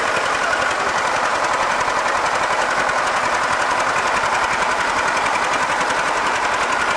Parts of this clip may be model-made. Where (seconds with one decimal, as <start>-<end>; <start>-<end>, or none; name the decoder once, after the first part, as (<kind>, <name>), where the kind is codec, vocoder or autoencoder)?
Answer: none